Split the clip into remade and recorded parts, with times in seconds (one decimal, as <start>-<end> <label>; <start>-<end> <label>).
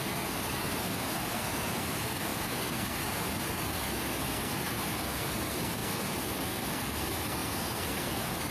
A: 0.0-8.5 remade